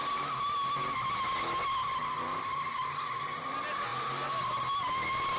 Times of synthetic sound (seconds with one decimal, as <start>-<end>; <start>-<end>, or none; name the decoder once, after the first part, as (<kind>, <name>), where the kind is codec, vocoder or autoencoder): none